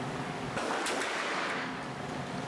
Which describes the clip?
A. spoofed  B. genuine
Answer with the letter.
A